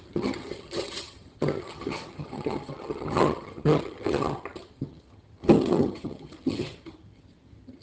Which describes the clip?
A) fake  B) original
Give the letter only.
A